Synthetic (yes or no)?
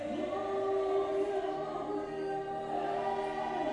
no